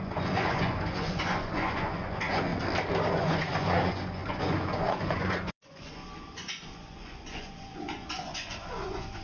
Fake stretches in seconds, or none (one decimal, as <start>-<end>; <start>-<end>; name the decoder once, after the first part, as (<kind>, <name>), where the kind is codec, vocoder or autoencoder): 0.0-2.5 (vocoder, Vocos); 3.1-9.2